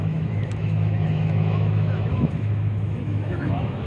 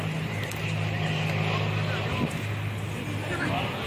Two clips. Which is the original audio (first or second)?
second